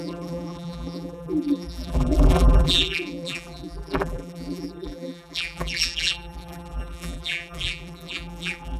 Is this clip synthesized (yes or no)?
yes